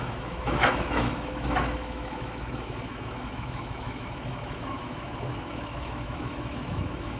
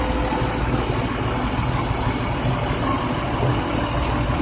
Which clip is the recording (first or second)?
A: second